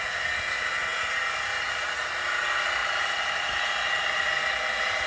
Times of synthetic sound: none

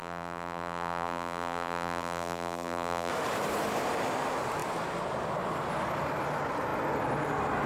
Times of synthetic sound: 0.0-3.1 (vocoder, BigVGAN v2)

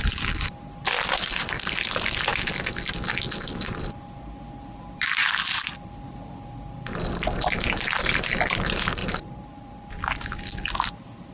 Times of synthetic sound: 9.0-10.4 (vocoder, BigVGAN v2)